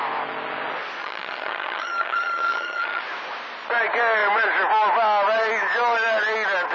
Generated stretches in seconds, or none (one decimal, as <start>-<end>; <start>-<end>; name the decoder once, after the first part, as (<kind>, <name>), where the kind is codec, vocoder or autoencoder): 1.0-3.0 (vocoder, HiFi-GAN)